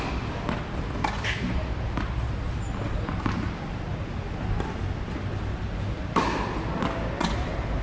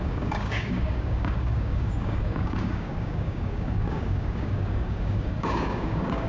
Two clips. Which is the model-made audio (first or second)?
second